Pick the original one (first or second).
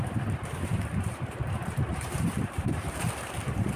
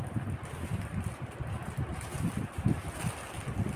second